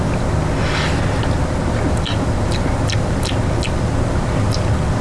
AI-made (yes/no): no